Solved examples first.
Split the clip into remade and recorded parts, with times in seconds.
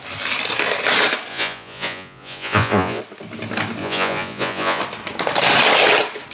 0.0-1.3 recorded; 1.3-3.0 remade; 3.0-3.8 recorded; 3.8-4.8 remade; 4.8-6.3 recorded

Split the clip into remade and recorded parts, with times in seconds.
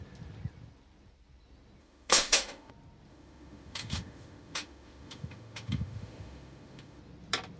0.0-1.8 recorded; 1.8-2.7 remade; 2.7-3.1 recorded; 3.1-7.0 remade; 7.0-7.6 recorded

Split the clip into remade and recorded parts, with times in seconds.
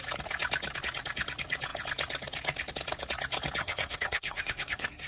0.0-3.6 recorded; 3.6-5.1 remade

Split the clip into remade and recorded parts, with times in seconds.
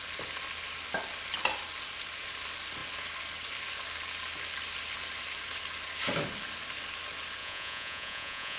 0.0-7.4 recorded; 7.4-8.6 remade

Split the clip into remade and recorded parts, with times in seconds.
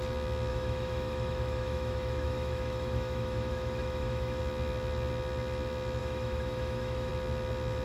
0.0-0.5 recorded; 0.5-4.4 remade; 4.4-6.0 recorded; 6.0-7.1 remade; 7.1-7.8 recorded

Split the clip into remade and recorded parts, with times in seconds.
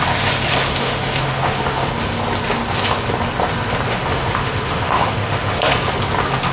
0.0-0.7 recorded; 0.7-1.9 remade; 1.9-3.9 recorded; 3.9-5.6 remade; 5.6-6.5 recorded